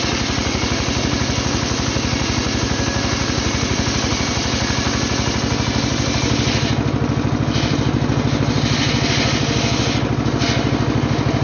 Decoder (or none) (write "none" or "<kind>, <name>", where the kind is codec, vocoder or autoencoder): none